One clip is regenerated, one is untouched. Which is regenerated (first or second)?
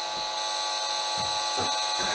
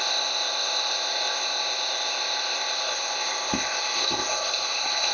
second